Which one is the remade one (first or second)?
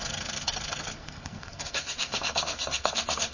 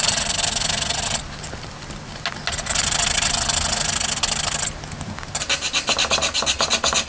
first